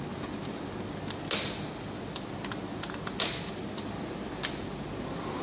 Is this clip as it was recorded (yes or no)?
yes